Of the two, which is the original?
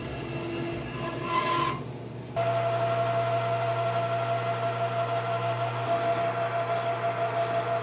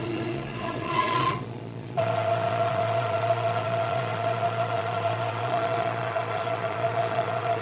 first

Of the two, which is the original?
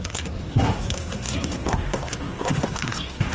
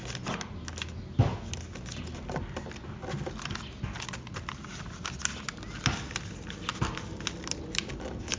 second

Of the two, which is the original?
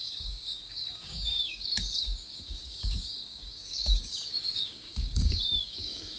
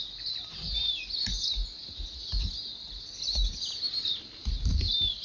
second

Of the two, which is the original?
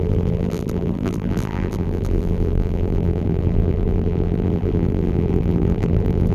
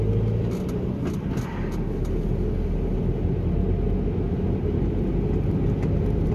second